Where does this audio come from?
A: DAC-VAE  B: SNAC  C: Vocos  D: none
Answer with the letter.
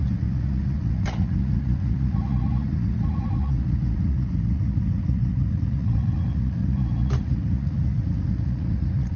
C